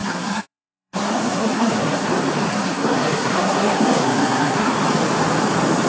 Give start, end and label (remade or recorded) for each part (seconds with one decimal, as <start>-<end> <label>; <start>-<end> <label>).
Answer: 0.0-2.1 remade; 2.1-2.5 recorded; 2.5-4.7 remade; 4.7-5.9 recorded